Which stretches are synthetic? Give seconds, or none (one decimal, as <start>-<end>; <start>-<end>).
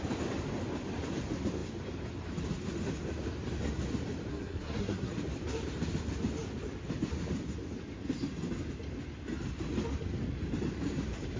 4.3-5.1